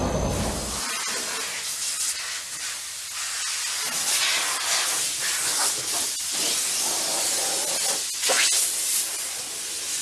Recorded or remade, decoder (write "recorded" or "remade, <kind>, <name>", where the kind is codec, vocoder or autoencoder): recorded